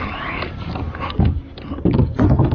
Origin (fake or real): real